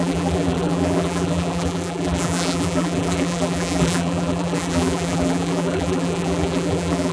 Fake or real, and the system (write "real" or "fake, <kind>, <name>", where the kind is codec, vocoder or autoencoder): fake, vocoder, BigVGAN v2